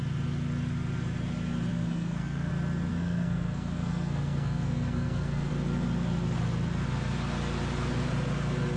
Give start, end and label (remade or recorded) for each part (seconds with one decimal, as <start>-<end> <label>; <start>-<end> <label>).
0.0-1.7 recorded; 1.7-2.5 remade; 2.5-2.9 recorded; 2.9-5.5 remade; 5.5-8.8 recorded